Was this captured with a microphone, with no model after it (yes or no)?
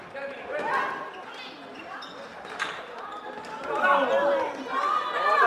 yes